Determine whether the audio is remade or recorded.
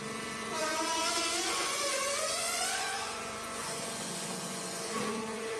remade